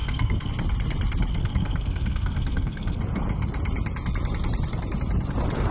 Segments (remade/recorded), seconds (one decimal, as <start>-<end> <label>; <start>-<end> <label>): 0.0-0.5 remade; 0.5-1.3 recorded; 1.3-3.0 remade; 3.0-5.7 recorded